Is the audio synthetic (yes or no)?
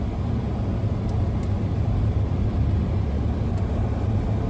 no